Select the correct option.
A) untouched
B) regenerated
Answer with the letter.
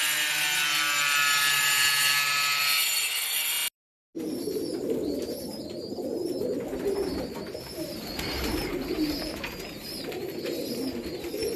A